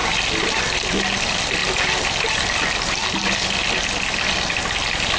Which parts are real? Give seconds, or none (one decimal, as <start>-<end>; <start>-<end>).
0.0-5.2